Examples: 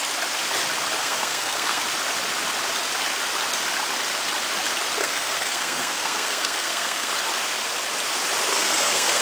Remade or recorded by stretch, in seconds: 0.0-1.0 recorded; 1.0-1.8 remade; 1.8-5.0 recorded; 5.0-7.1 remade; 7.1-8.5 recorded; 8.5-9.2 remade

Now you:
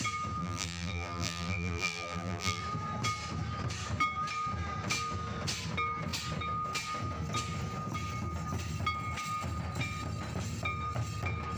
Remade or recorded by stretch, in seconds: 0.0-0.4 recorded; 0.4-2.6 remade; 2.6-11.6 recorded

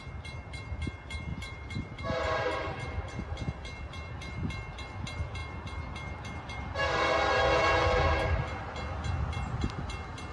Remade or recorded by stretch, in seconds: 0.0-1.3 recorded; 1.3-2.0 remade; 2.0-10.3 recorded

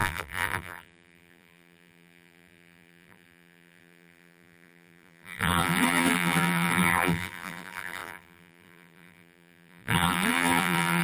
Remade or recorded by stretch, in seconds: 0.0-11.0 remade